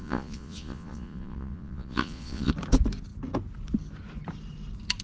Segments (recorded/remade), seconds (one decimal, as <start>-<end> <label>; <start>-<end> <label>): 0.0-2.5 remade; 2.5-5.0 recorded